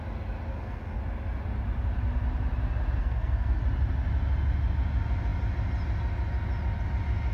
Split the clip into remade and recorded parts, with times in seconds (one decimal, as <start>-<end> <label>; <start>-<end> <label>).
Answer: 0.0-0.5 recorded; 0.5-1.0 remade; 1.0-3.0 recorded; 3.0-3.6 remade; 3.6-7.3 recorded